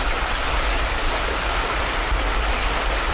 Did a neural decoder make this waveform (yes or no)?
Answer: no